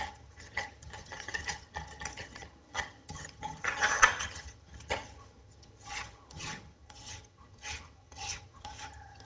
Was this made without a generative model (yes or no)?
no